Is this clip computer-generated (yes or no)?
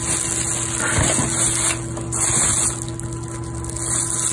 no